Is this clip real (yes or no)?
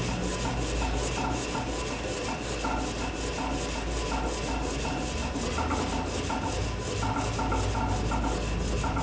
yes